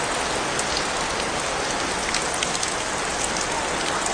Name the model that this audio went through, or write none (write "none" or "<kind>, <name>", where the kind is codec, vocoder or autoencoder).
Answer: none